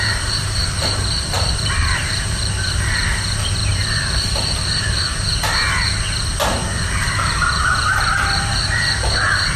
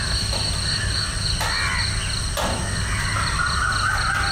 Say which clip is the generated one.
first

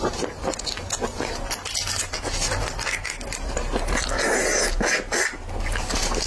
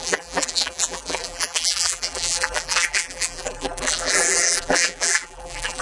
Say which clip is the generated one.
second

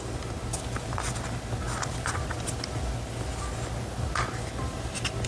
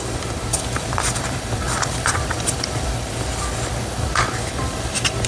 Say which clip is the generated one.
second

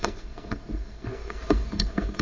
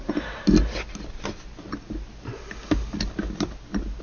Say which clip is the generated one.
first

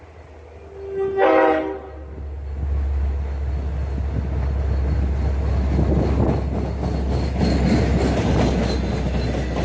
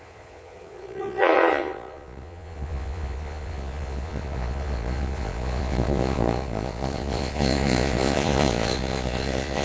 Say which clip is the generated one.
second